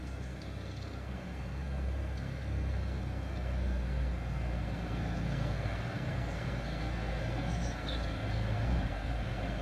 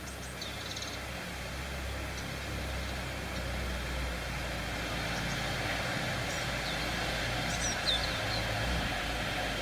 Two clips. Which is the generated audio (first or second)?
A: first